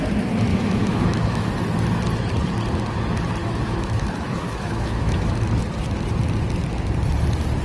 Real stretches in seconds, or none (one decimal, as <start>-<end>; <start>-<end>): 0.0-0.5; 1.5-3.4; 5.3-7.6